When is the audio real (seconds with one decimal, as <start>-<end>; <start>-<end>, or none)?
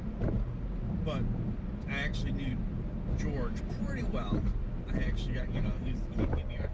0.0-6.7